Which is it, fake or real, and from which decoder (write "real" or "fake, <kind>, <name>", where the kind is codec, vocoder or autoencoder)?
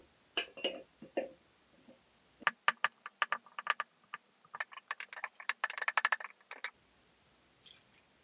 real